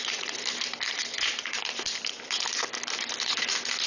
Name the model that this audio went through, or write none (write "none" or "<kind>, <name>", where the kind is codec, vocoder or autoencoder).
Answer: vocoder, BigVGAN v2